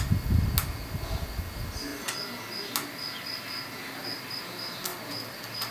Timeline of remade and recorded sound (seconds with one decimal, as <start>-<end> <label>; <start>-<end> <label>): 0.0-5.7 recorded